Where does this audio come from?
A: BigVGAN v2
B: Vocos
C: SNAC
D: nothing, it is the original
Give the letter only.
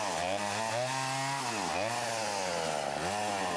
D